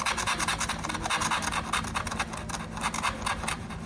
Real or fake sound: real